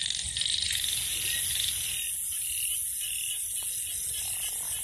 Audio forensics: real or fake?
real